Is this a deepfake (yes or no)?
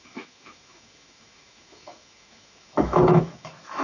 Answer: yes